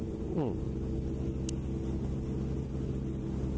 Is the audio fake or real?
real